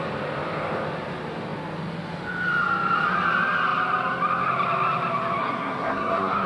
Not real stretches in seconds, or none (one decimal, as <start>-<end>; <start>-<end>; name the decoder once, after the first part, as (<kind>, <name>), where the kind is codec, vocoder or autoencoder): 5.4-6.5 (codec, SNAC)